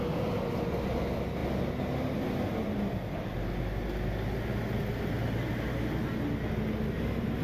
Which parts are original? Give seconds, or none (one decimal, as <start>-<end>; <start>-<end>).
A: 0.0-7.4